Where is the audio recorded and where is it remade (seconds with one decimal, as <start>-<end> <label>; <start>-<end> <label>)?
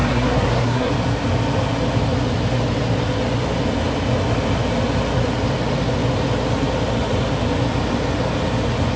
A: 0.0-0.9 remade; 0.9-9.0 recorded